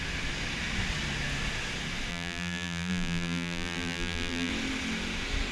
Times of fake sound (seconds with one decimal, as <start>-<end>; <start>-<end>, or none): 2.1-4.5